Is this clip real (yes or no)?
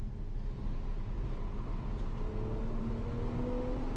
yes